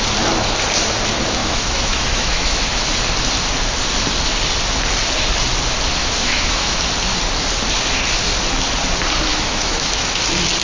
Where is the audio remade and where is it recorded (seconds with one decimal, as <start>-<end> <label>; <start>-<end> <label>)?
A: 0.0-1.4 recorded; 1.4-2.9 remade; 2.9-6.0 recorded; 6.0-6.8 remade; 6.8-9.3 recorded; 9.3-10.2 remade; 10.2-10.6 recorded